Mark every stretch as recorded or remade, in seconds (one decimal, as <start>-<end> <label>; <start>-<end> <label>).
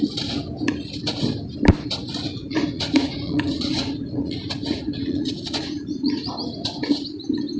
0.0-2.4 recorded; 2.4-6.3 remade; 6.3-7.6 recorded